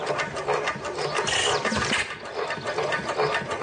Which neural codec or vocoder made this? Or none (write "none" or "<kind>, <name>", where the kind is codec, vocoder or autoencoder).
none